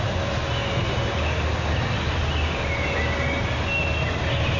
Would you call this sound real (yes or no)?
yes